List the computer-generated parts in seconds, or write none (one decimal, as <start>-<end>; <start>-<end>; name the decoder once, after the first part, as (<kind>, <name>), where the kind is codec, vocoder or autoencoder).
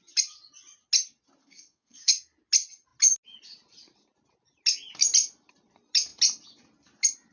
1.4-2.1 (codec, SNAC)